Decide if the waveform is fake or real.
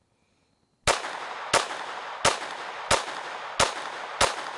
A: real